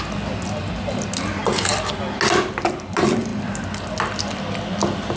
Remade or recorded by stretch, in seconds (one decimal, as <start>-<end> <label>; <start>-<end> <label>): 0.0-5.2 recorded